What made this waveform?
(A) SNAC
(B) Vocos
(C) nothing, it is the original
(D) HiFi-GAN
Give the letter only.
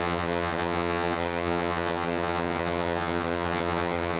D